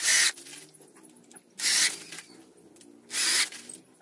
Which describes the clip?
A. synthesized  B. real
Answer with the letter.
B